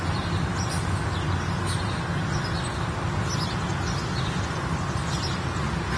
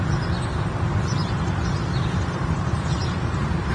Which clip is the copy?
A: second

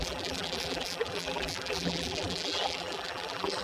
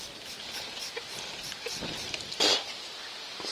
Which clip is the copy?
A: first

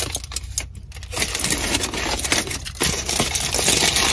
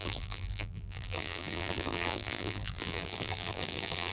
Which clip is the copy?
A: second